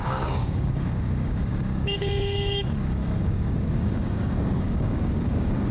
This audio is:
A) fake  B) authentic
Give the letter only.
A